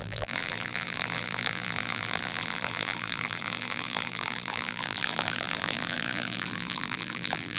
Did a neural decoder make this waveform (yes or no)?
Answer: yes